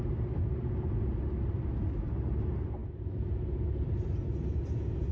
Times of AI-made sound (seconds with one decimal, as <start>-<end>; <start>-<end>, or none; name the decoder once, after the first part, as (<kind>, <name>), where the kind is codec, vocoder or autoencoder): none